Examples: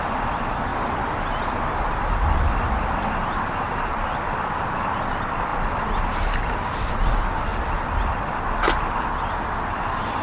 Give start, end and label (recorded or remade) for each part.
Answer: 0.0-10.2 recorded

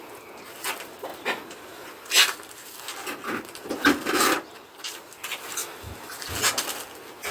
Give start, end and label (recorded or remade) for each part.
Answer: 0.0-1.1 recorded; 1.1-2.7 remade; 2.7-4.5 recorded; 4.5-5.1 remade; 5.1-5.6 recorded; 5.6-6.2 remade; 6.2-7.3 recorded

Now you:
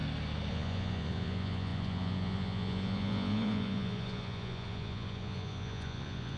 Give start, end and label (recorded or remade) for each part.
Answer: 0.0-0.5 recorded; 0.5-6.4 remade